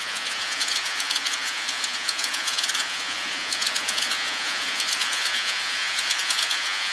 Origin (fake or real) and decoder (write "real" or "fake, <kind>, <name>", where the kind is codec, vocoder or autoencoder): fake, vocoder, Vocos